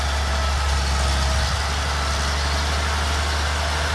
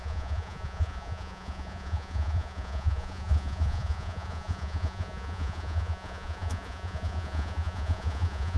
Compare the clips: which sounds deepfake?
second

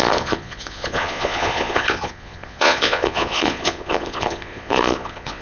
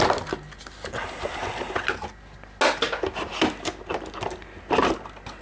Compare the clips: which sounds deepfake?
first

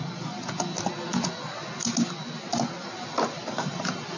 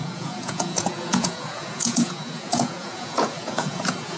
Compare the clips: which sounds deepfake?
second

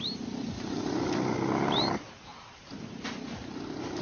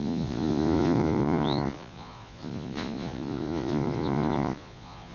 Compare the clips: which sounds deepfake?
second